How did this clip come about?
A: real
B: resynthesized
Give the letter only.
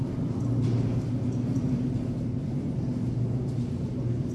A